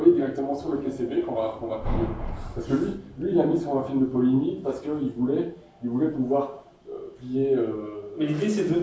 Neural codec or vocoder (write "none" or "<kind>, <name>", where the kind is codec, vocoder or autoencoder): none